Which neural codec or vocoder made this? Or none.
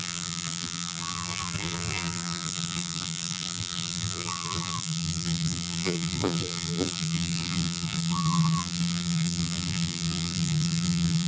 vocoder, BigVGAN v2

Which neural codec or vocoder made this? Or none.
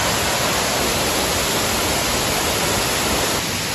none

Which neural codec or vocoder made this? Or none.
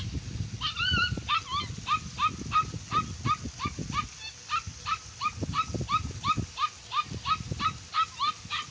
none